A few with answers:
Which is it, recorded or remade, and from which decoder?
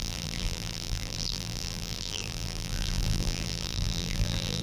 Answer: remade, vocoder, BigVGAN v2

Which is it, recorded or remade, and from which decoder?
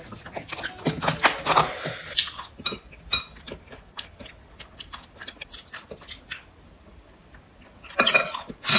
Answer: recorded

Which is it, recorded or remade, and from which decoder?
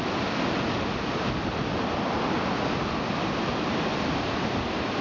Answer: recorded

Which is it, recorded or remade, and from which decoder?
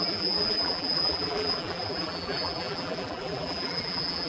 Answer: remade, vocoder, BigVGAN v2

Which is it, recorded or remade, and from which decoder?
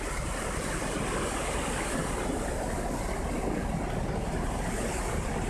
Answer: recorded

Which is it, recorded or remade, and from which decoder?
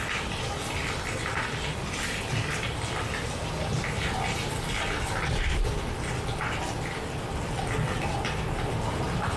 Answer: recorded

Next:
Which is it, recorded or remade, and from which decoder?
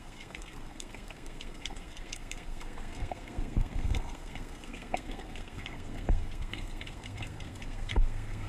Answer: remade, codec, SNAC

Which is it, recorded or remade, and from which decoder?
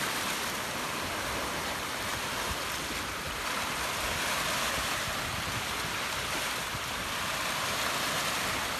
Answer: remade, vocoder, BigVGAN v2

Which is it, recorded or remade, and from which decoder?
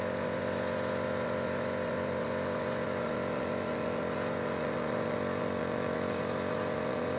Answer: remade, vocoder, Vocos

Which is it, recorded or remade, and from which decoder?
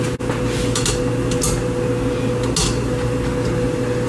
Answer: recorded